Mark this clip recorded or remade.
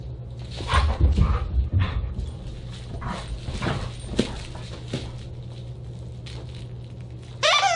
recorded